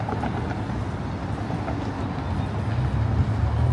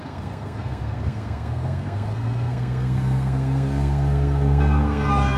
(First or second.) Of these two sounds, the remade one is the second